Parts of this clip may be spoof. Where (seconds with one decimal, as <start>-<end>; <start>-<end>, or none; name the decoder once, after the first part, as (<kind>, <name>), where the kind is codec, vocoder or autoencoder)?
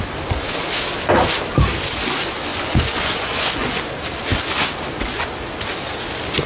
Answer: 2.5-3.8 (vocoder, Vocos)